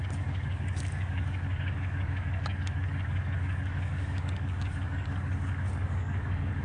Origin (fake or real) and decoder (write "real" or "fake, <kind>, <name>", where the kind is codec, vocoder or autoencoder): fake, codec, DAC